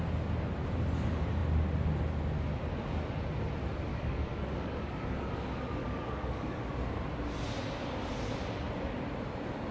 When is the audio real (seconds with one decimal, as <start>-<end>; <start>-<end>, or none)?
0.0-3.9; 5.3-5.8; 6.6-9.7